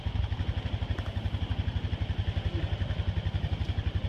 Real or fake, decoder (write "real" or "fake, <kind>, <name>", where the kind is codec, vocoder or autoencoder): real